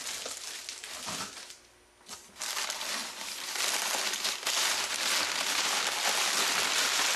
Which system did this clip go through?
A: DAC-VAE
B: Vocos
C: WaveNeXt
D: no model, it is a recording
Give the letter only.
D